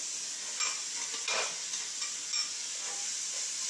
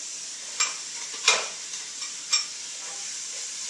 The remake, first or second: second